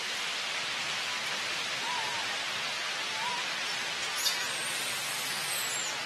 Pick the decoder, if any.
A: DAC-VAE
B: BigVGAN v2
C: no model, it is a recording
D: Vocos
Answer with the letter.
C